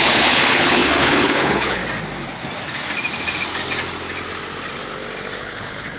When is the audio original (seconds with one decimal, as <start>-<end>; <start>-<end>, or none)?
1.8-5.4